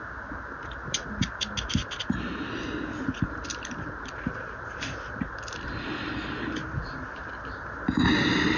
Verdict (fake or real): real